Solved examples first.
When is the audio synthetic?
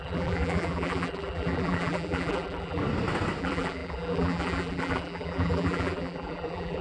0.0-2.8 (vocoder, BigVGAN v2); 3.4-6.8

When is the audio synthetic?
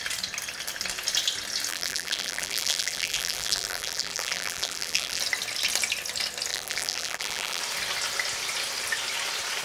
1.7-5.2 (vocoder, BigVGAN v2); 6.5-7.6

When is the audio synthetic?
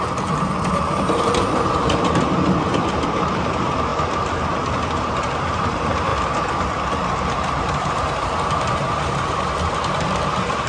0.0-3.9 (vocoder, BigVGAN v2); 5.2-6.1; 7.2-10.7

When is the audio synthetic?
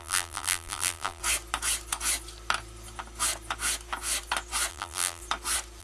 0.0-1.2 (vocoder, BigVGAN v2); 4.7-5.2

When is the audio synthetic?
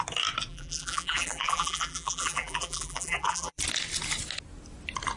0.5-3.6 (vocoder, BigVGAN v2)